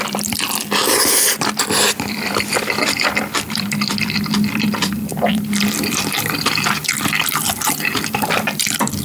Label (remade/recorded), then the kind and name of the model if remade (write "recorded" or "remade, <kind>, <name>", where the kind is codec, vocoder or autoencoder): remade, vocoder, BigVGAN v2